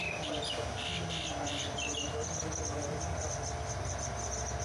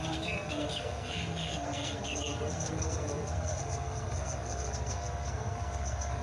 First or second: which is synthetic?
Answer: second